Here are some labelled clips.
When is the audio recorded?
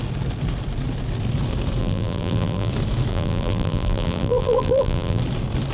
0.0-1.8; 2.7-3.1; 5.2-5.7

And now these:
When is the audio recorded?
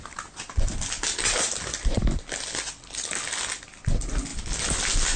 0.0-4.3; 4.8-5.2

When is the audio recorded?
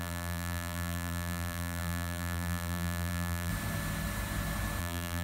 3.5-4.8